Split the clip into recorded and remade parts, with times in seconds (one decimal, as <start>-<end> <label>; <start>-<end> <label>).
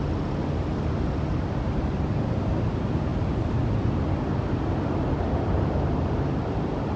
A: 0.0-7.0 recorded